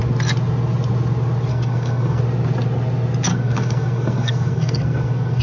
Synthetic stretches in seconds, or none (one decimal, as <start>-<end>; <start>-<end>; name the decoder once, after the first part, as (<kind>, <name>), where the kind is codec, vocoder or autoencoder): 1.5-2.2 (codec, SNAC); 3.3-5.4